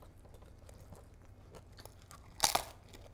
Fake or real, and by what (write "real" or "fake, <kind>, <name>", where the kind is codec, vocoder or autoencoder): real